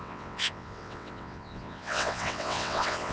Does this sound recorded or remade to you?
remade